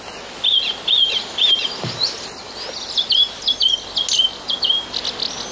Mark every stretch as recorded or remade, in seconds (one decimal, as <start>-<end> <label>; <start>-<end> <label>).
0.0-1.0 recorded; 1.0-2.4 remade; 2.4-5.5 recorded